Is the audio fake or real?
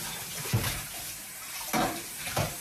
fake